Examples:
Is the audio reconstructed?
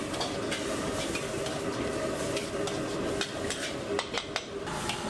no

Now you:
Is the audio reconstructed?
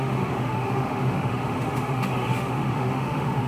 yes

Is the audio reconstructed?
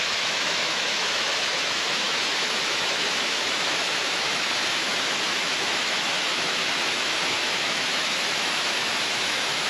yes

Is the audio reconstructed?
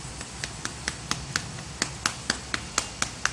no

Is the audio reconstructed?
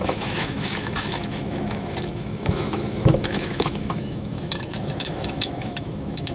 yes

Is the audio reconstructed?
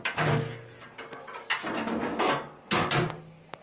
no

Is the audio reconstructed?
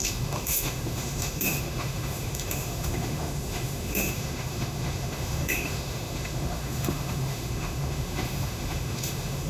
yes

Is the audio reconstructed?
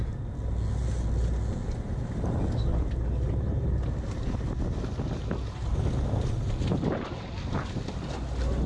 no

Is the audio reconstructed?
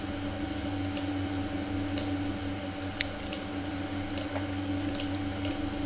no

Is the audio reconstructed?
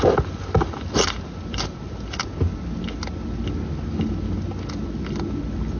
no